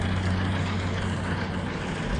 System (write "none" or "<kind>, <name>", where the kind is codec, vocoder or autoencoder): none